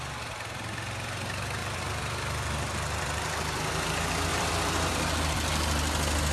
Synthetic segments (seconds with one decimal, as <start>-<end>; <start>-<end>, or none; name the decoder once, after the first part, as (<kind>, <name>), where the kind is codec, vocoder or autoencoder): 1.6-3.6 (vocoder, BigVGAN v2); 4.3-4.9